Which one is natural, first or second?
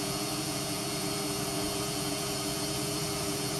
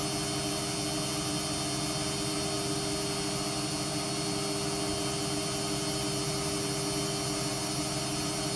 second